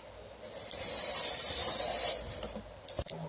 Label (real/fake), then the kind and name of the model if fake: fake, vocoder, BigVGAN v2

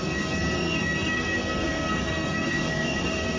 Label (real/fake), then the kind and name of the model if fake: fake, codec, SNAC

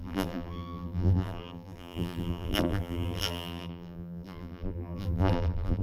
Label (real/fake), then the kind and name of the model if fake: fake, vocoder, BigVGAN v2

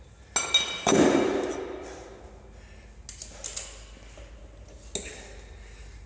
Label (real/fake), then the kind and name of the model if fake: real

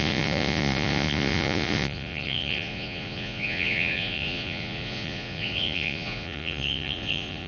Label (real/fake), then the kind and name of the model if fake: fake, vocoder, Vocos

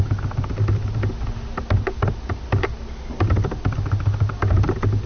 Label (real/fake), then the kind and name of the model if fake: real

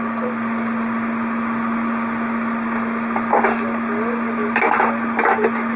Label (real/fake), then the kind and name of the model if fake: real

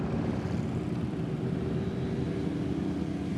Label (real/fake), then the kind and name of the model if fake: real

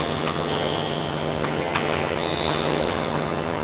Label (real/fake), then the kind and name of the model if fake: fake, vocoder, HiFi-GAN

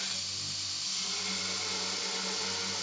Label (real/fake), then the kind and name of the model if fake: real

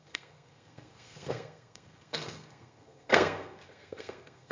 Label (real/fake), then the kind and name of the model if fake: fake, codec, SNAC